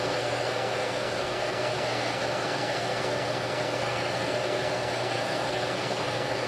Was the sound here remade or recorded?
remade